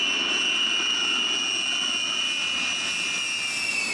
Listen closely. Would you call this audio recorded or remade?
recorded